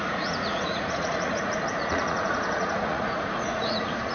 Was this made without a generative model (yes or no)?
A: no